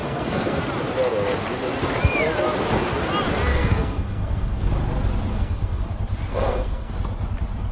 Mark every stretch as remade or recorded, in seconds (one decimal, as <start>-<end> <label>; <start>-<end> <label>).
0.0-0.6 remade; 0.6-3.5 recorded; 3.5-4.7 remade; 4.7-5.3 recorded; 5.3-5.8 remade; 5.8-6.3 recorded; 6.3-6.9 remade; 6.9-7.7 recorded